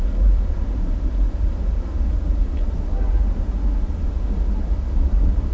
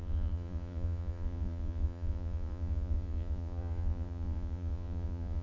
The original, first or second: first